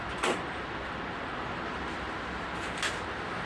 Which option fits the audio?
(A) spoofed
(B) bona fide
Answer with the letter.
B